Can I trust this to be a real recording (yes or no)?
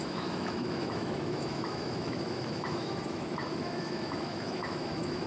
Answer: no